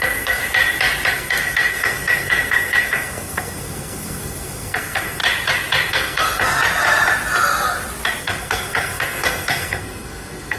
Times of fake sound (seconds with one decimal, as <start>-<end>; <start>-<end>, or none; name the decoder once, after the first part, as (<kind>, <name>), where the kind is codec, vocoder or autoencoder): 0.0-0.4 (codec, SNAC); 1.1-5.2; 5.9-6.6; 8.2-10.6